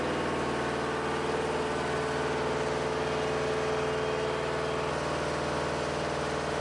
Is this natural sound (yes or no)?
yes